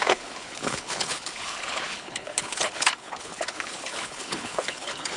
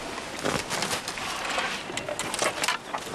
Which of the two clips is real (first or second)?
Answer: second